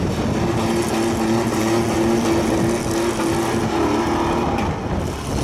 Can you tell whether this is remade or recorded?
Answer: recorded